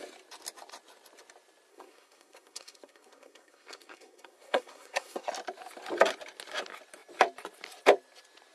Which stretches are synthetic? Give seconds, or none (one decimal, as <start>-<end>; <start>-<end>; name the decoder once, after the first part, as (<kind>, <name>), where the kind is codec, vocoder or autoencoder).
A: 1.7-5.3 (codec, SNAC)